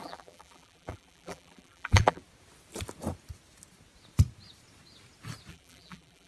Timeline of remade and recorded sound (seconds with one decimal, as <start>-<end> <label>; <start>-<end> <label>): 0.0-2.2 remade; 2.2-5.5 recorded; 5.5-6.3 remade